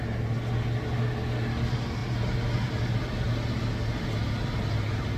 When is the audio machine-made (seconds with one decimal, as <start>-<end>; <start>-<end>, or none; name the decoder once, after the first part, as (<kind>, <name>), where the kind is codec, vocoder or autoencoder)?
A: none